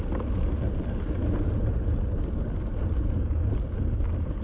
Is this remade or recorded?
recorded